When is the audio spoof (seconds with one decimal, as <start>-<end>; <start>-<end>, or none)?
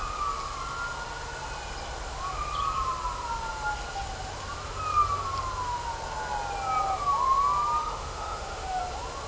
7.8-8.8